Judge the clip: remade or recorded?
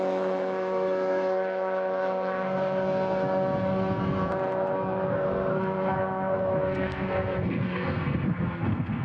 remade